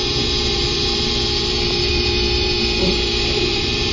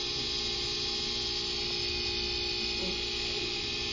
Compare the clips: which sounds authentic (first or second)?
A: second